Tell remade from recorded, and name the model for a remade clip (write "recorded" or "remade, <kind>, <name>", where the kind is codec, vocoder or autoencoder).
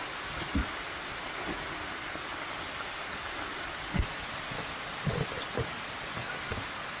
recorded